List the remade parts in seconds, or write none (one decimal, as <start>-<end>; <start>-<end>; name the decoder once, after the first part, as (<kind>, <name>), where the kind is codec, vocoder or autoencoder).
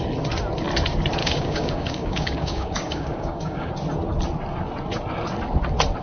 1.2-3.7 (codec, DAC)